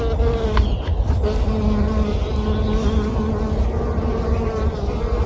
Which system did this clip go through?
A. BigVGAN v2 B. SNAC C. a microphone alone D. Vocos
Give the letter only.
C